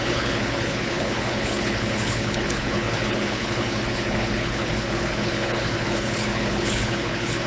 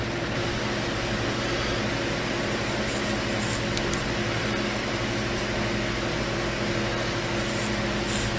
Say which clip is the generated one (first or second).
first